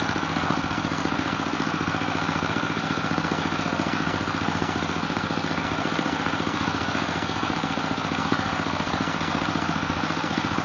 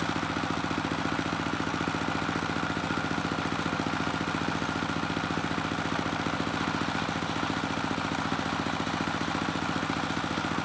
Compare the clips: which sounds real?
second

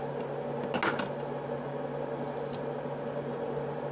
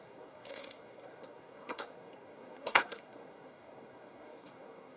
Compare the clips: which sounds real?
first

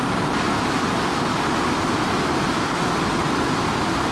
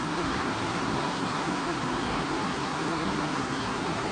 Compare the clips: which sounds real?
first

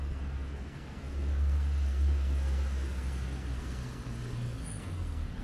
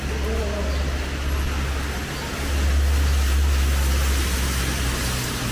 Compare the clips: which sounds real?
second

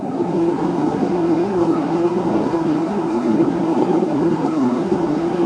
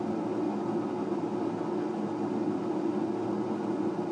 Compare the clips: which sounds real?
second